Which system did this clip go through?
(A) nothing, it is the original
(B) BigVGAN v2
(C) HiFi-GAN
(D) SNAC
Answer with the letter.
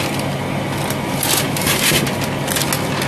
A